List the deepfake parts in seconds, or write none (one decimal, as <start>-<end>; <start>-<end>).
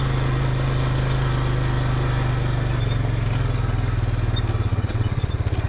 4.7-5.3